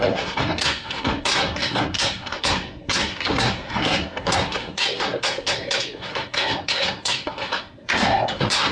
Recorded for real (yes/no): no